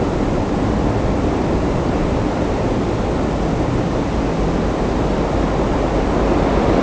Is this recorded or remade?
recorded